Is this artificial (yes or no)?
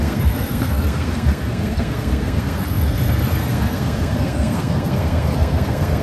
yes